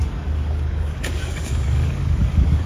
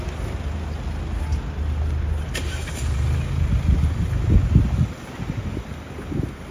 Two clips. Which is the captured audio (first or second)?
second